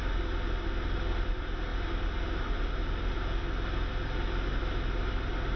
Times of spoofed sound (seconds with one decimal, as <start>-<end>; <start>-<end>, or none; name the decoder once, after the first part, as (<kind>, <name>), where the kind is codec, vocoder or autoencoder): none